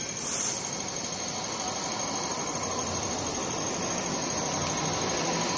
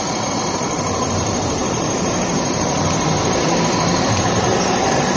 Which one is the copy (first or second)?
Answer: second